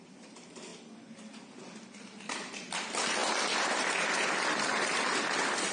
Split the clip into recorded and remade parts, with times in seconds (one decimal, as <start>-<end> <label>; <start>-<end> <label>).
0.0-0.7 remade; 0.7-2.6 recorded; 2.6-3.2 remade; 3.2-4.1 recorded; 4.1-5.7 remade